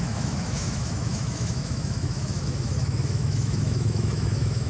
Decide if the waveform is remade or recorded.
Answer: remade